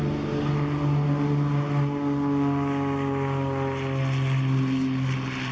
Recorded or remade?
recorded